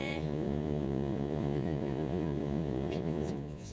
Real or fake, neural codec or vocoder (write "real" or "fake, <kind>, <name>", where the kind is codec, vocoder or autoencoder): fake, vocoder, Vocos